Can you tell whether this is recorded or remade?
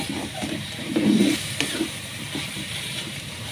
remade